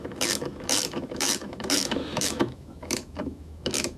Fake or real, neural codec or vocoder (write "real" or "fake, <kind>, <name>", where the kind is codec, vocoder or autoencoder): fake, autoencoder, DAC-VAE